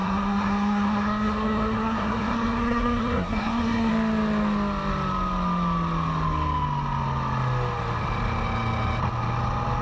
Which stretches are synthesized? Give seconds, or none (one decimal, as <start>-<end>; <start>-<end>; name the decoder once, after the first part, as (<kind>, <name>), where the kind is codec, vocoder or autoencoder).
0.0-3.9 (codec, SNAC)